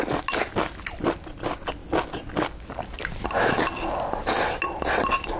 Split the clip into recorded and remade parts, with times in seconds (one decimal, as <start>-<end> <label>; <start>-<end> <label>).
0.0-5.4 recorded